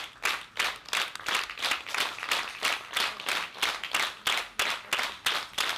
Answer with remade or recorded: recorded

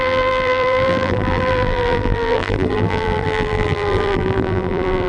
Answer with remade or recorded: remade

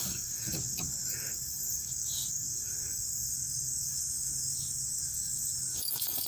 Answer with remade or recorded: remade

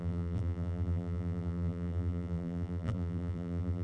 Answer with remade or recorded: remade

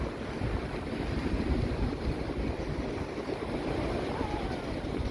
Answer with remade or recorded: recorded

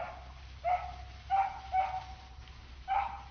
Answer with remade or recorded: recorded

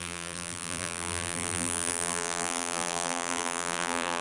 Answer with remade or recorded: remade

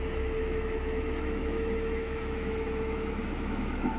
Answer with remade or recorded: remade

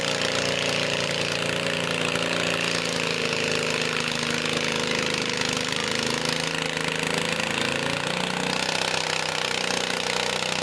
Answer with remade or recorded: recorded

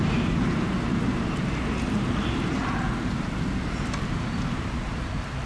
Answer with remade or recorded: remade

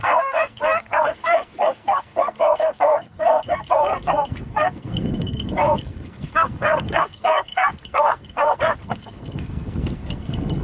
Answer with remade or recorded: remade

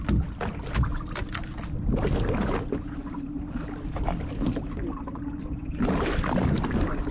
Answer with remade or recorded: recorded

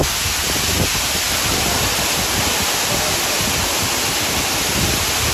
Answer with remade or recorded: recorded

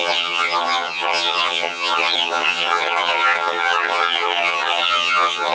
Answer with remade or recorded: remade